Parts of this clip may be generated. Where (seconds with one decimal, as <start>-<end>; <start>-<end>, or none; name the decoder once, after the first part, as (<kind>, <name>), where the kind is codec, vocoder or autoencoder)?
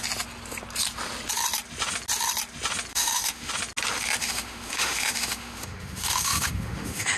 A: 2.9-3.5 (autoencoder, DAC-VAE); 4.2-7.2